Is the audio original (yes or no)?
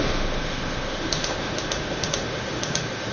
no